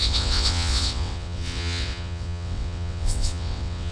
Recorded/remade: remade